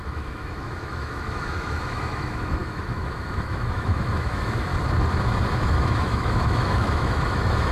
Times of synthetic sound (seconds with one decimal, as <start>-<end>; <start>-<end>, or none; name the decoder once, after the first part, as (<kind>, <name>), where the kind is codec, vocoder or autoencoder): 0.0-4.7 (autoencoder, DAC-VAE); 5.5-7.7